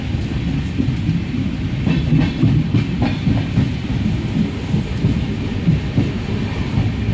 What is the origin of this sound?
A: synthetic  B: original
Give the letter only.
B